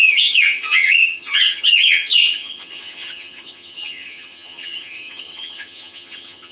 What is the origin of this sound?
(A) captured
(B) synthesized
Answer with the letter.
B